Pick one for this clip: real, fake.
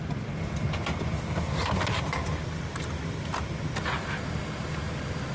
real